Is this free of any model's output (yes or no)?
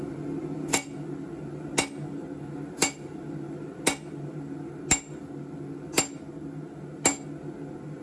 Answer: yes